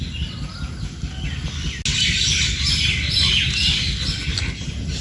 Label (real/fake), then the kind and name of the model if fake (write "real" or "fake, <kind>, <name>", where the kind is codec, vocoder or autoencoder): real